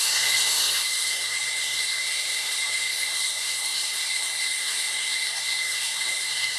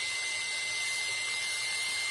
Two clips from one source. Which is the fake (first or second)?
first